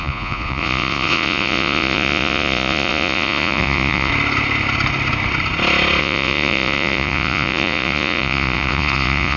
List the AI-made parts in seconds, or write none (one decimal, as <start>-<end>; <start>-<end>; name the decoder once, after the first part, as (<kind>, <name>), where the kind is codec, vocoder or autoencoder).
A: 0.0-4.1 (vocoder, Vocos); 6.0-9.4